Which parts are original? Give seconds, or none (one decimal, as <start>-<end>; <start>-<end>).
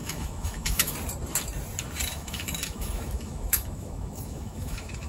0.9-2.1